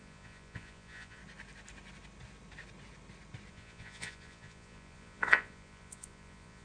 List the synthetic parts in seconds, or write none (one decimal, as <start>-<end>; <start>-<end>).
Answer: 0.0-1.2; 3.5-6.6